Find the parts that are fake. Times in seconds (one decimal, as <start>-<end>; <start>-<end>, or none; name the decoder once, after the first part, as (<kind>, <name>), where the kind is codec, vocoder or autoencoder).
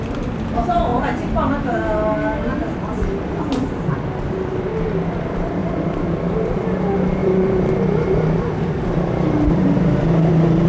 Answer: 5.6-6.4 (vocoder, BigVGAN v2); 7.2-7.7